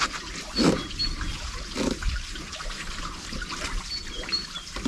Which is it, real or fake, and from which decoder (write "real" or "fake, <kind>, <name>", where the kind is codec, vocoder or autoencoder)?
real